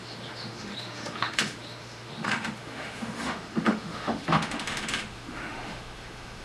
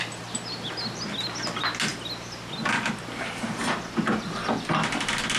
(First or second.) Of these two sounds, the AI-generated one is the first